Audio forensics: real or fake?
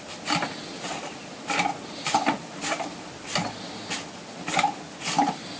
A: real